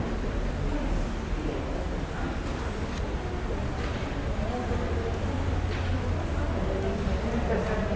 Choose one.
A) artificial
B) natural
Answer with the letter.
B